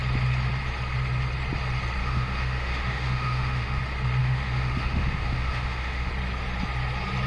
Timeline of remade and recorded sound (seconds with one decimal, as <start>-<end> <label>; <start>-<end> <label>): 0.0-2.0 recorded; 2.0-3.8 remade; 3.8-4.2 recorded; 4.2-6.1 remade; 6.1-7.3 recorded